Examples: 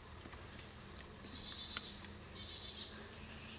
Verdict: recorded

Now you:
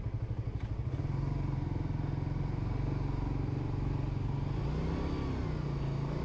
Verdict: recorded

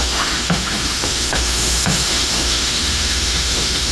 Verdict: remade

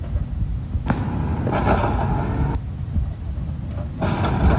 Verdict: recorded